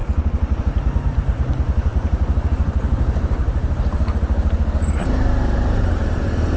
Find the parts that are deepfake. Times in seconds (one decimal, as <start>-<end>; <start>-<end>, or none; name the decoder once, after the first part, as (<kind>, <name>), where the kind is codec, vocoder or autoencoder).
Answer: 0.6-6.6 (vocoder, BigVGAN v2)